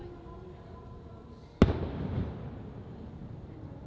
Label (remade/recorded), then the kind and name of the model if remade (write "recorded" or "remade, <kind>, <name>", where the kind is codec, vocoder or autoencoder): recorded